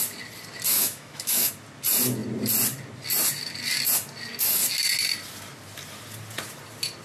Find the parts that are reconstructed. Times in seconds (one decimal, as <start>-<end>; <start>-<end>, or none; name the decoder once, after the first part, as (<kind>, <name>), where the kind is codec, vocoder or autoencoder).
0.7-1.5 (autoencoder, DAC-VAE)